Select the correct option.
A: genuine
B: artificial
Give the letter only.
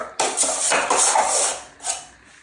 A